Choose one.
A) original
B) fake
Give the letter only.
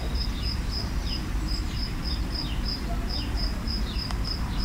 B